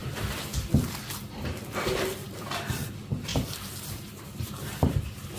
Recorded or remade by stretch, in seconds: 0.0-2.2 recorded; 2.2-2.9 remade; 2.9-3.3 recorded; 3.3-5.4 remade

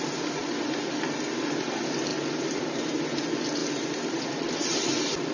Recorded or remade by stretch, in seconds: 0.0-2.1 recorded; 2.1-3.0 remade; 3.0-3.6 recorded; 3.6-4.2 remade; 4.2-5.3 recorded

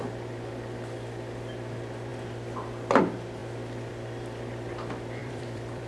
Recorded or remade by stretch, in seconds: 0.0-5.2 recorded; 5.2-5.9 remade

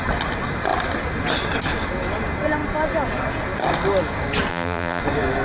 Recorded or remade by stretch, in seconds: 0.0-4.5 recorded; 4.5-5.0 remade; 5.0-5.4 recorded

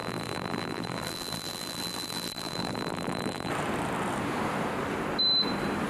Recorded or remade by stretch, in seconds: 0.0-3.5 remade; 3.5-5.9 recorded